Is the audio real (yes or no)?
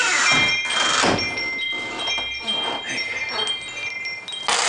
yes